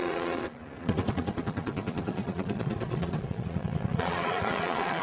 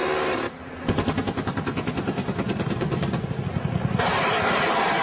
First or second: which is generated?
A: first